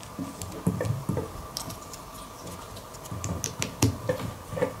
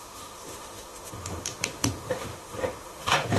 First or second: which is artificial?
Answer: second